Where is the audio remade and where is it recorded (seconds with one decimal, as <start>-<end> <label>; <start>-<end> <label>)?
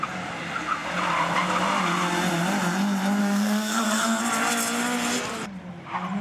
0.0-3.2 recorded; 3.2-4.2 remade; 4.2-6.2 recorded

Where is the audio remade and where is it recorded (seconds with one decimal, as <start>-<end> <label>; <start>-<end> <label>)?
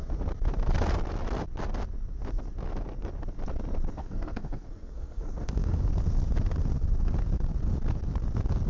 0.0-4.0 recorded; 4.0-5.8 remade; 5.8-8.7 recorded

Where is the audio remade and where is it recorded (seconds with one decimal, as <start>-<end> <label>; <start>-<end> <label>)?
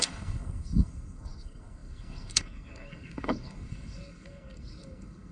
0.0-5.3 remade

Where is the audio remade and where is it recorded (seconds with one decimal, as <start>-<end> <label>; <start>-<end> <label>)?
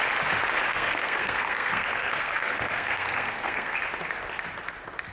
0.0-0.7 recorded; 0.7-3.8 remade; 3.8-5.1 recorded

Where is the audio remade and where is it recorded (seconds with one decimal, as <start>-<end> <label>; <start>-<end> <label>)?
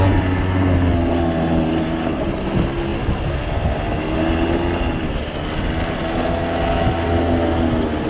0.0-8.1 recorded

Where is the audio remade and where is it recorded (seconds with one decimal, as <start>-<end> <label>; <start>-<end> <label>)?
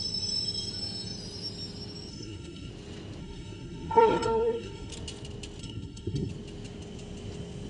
0.0-2.1 recorded; 2.1-2.7 remade; 2.7-3.2 recorded; 3.2-4.9 remade; 4.9-5.6 recorded; 5.6-6.3 remade; 6.3-7.7 recorded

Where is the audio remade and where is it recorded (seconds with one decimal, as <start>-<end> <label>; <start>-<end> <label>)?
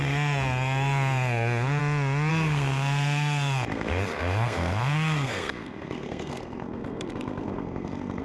0.0-1.8 remade; 1.8-2.3 recorded; 2.3-8.2 remade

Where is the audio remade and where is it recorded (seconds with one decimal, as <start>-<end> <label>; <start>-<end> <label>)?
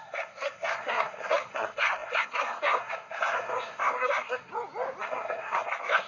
0.0-4.5 remade; 4.5-5.0 recorded; 5.0-6.1 remade